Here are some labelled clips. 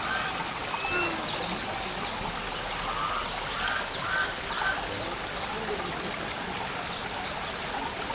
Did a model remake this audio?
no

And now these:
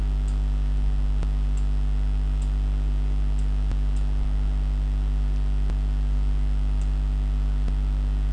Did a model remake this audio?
no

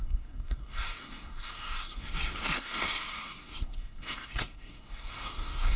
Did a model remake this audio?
yes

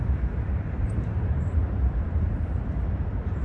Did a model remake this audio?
yes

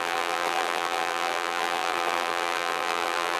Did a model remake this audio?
yes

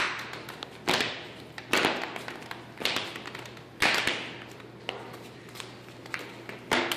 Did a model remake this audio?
no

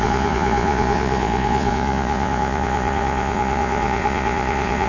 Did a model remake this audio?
yes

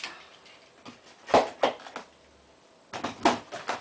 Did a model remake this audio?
no